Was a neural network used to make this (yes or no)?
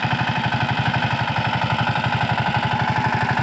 yes